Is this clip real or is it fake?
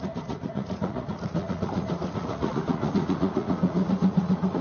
fake